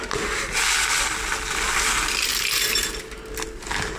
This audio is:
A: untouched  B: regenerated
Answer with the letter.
A